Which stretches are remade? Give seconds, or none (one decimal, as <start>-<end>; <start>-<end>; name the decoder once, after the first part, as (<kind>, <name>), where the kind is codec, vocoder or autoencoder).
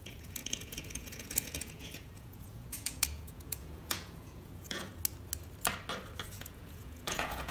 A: 0.0-4.9 (vocoder, Vocos); 6.3-7.5